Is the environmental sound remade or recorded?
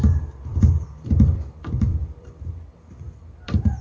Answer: remade